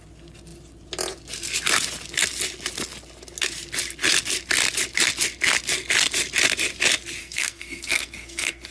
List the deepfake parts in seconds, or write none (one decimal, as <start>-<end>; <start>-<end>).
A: 7.2-8.7